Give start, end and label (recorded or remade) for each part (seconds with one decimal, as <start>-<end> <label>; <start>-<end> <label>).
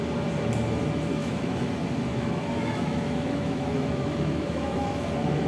0.0-1.2 recorded; 1.2-1.7 remade; 1.7-2.1 recorded; 2.1-5.1 remade; 5.1-5.5 recorded